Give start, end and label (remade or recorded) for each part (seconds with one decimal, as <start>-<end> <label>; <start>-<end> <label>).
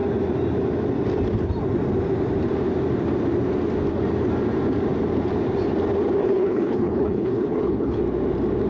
0.0-6.2 recorded; 6.2-8.0 remade; 8.0-8.7 recorded